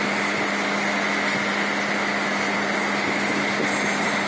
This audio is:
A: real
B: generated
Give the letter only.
A